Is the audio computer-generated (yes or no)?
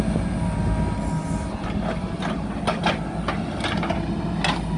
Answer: no